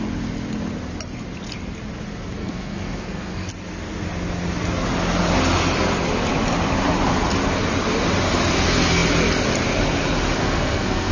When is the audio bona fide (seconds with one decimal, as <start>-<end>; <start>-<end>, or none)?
0.0-2.4; 3.5-10.4